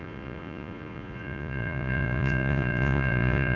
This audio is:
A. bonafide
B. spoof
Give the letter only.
B